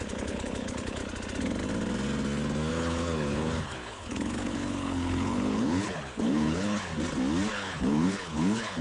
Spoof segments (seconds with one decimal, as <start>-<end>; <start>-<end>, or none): 0.0-1.0; 2.7-6.9; 7.5-8.8